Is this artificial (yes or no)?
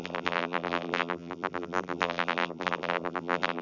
yes